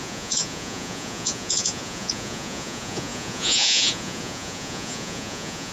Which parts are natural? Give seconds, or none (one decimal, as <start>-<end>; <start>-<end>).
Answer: none